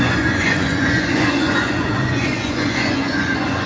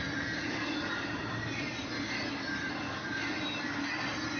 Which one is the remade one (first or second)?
first